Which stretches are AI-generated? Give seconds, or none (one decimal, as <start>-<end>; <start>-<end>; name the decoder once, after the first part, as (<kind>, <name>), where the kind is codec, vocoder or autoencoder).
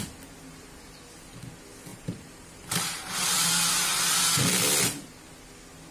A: 1.9-3.3 (vocoder, BigVGAN v2)